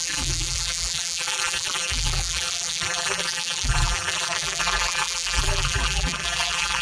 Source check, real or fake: fake